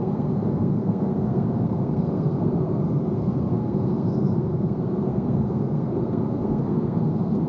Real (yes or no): no